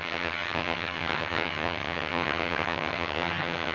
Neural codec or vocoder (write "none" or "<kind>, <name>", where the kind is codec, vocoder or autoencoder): vocoder, HiFi-GAN